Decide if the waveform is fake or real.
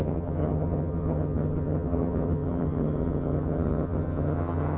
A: fake